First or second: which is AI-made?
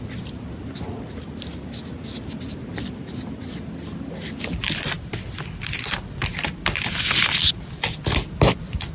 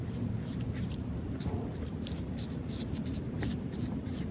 second